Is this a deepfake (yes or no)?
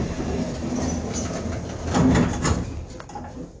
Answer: no